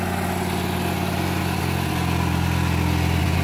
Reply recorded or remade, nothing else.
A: recorded